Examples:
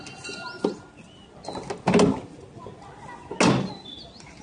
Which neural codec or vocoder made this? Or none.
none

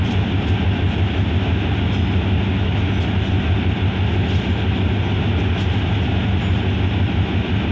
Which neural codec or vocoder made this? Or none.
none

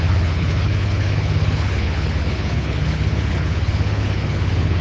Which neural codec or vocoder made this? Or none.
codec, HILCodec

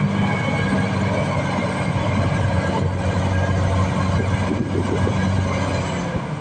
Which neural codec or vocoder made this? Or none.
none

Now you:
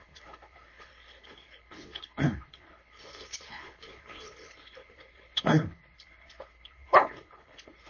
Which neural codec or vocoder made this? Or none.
codec, HILCodec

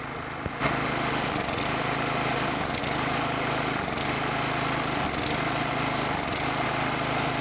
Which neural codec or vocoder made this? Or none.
none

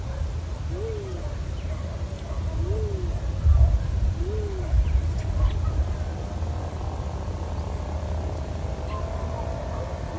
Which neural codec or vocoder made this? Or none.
none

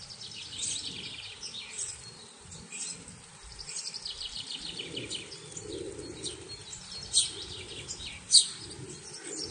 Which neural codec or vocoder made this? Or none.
none